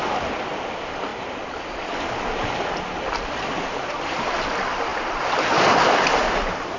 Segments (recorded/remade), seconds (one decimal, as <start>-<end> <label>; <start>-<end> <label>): 0.0-6.8 recorded